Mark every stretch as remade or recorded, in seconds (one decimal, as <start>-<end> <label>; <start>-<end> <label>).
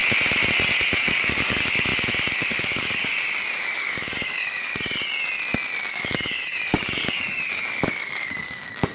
0.0-1.0 recorded; 1.0-1.9 remade; 1.9-2.5 recorded; 2.5-3.1 remade; 3.1-3.8 recorded; 3.8-4.7 remade; 4.7-5.9 recorded; 5.9-8.9 remade